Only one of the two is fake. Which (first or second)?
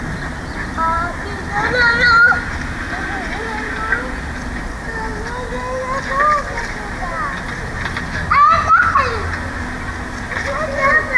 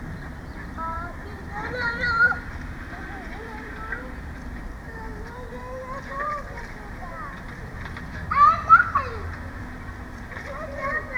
second